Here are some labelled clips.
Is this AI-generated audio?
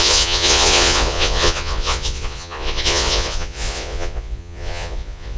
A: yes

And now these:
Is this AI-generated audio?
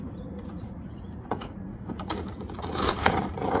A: yes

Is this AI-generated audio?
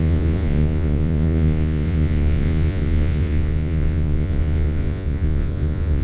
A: yes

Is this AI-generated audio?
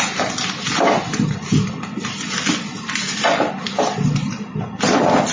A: no